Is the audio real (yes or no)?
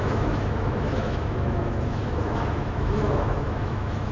no